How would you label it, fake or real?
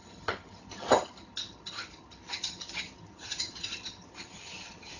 fake